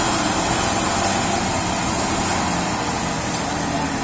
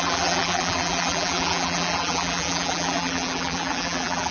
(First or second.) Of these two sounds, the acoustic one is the first